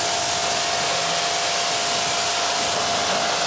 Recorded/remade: recorded